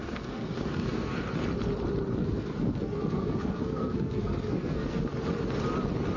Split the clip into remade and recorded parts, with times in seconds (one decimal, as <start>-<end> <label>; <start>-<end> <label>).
0.0-1.2 remade; 1.2-2.2 recorded; 2.2-5.0 remade; 5.0-6.2 recorded